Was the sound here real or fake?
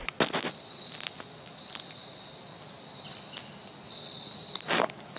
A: real